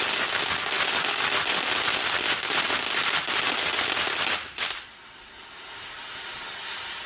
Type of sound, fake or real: real